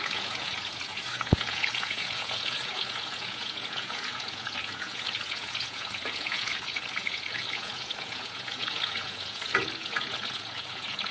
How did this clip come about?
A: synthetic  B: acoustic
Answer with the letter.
A